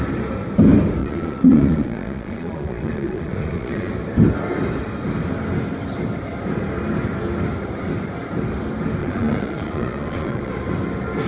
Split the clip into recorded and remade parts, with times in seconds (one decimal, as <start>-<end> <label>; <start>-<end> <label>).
0.0-1.0 recorded; 1.0-3.9 remade; 3.9-9.0 recorded; 9.0-10.5 remade; 10.5-11.3 recorded